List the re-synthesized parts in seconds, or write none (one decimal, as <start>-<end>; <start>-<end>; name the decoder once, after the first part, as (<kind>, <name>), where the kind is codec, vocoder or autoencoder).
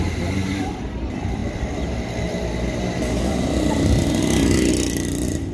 none